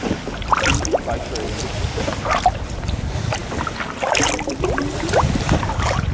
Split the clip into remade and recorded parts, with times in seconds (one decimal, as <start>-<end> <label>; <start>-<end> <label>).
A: 0.0-6.1 recorded